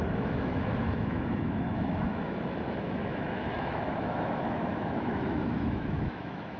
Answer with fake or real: fake